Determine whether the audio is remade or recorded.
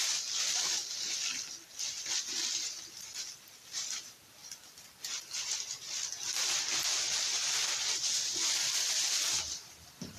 remade